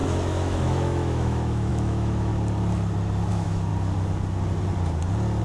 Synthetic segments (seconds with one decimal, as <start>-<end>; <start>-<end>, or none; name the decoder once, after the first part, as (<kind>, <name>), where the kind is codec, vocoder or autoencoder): 0.0-2.3 (autoencoder, DAC-VAE); 3.3-3.7